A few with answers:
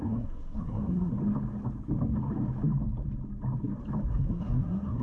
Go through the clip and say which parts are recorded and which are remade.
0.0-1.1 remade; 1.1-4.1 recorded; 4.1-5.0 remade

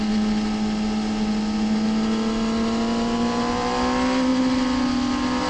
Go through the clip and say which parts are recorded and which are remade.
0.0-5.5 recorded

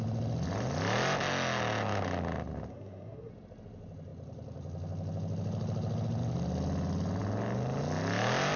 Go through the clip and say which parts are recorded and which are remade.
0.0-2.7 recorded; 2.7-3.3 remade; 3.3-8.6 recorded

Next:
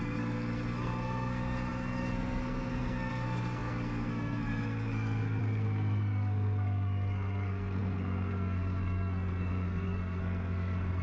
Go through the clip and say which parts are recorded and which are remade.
0.0-11.0 remade

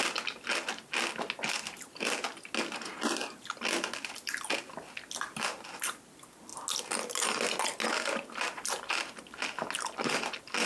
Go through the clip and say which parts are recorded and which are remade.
0.0-10.7 recorded

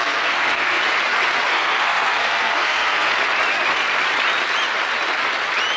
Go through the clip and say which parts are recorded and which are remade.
0.0-0.8 remade; 0.8-1.5 recorded; 1.5-3.1 remade; 3.1-5.8 recorded

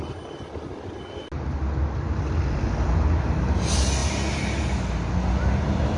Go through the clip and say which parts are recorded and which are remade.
0.0-6.0 recorded

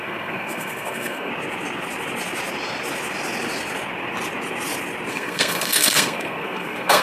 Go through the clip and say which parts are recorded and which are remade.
0.0-1.3 remade; 1.3-5.1 recorded; 5.1-7.0 remade